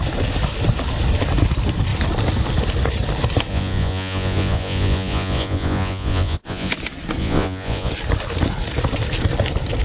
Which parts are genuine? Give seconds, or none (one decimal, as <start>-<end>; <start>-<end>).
0.0-3.5; 6.7-7.2; 7.9-9.8